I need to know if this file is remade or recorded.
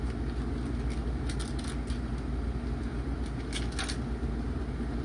recorded